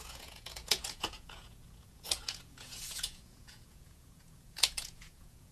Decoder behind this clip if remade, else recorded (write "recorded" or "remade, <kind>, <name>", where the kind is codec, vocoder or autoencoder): remade, vocoder, Vocos